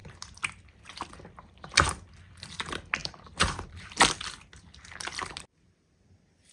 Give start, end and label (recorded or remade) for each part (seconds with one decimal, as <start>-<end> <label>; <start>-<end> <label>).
0.0-3.0 recorded; 3.0-4.4 remade; 4.4-6.5 recorded